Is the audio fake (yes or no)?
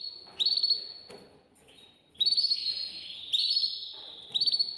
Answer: no